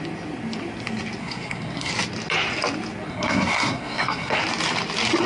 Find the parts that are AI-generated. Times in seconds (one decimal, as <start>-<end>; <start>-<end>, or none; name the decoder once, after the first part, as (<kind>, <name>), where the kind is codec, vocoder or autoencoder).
1.2-1.9 (codec, SNAC); 3.1-4.4